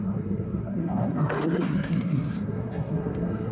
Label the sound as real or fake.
fake